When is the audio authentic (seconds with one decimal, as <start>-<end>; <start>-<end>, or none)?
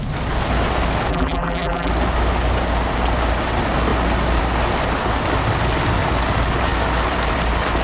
0.0-1.1; 1.9-7.8